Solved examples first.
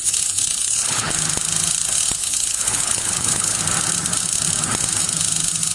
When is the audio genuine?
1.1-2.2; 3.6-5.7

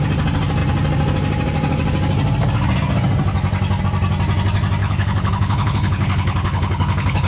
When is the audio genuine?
0.0-4.8

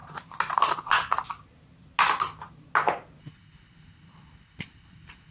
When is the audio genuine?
0.0-3.2

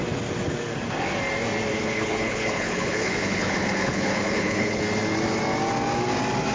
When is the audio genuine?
0.0-1.7; 4.8-6.5

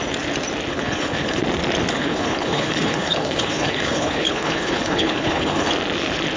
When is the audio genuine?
0.0-0.7; 1.4-1.9; 5.7-6.4

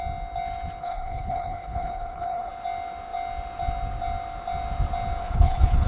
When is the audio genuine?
0.0-0.8; 2.5-5.2

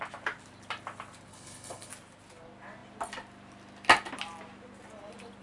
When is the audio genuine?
0.0-1.3; 1.9-5.4